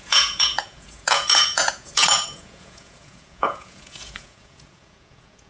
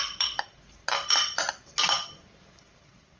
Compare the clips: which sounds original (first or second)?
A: second